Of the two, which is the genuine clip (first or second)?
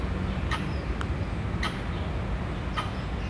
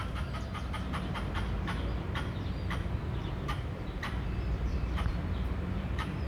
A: first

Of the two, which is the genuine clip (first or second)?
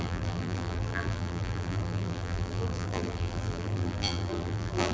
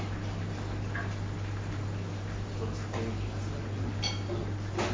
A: second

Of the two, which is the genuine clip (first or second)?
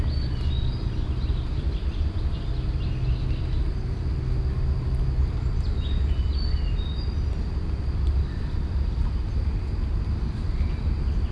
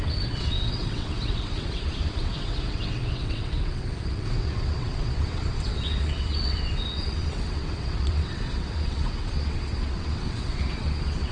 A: first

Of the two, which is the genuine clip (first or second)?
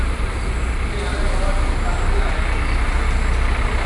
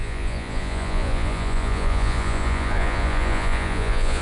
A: first